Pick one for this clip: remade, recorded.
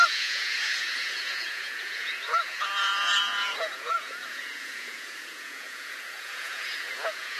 remade